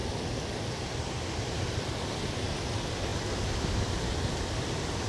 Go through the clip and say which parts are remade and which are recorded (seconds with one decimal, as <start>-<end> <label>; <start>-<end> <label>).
0.0-5.1 recorded